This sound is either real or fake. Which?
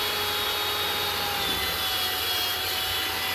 real